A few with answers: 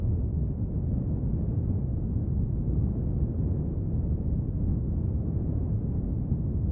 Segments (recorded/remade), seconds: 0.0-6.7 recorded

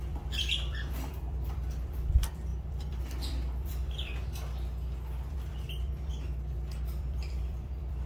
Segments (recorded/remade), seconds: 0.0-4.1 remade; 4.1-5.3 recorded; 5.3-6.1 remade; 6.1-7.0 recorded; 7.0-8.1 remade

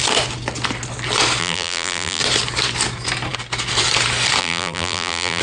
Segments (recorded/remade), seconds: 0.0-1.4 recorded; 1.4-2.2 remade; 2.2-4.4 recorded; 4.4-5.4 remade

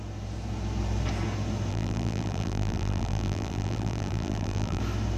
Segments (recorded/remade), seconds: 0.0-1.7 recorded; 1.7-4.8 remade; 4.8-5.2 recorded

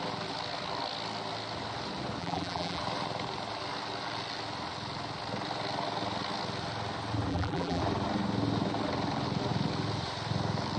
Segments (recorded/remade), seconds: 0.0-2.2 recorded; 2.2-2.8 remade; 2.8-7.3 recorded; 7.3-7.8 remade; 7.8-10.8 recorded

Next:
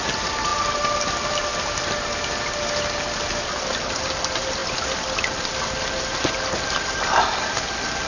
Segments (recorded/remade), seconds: 0.0-4.6 remade; 4.6-5.2 recorded; 5.2-8.1 remade

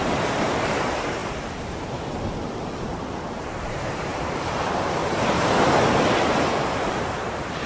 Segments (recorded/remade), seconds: 0.0-1.2 remade; 1.2-2.4 recorded; 2.4-5.0 remade; 5.0-6.5 recorded; 6.5-7.7 remade

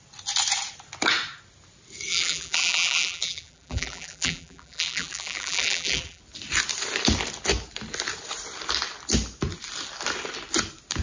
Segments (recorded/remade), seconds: 0.0-2.1 recorded; 2.1-6.2 remade; 6.2-11.0 recorded